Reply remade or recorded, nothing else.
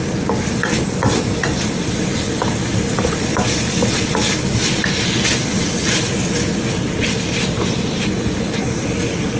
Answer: recorded